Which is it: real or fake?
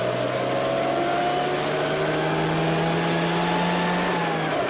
real